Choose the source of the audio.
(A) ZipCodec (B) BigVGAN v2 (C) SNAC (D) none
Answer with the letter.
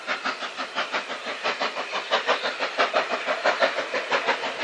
D